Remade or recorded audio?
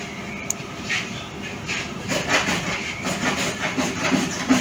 remade